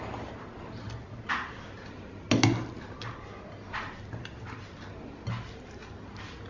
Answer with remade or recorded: recorded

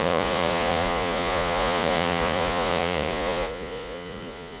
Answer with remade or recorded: remade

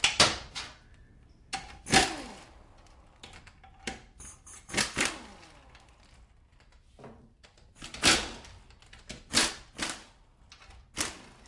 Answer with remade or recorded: recorded